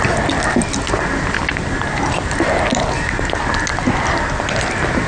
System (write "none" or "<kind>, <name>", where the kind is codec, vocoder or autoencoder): none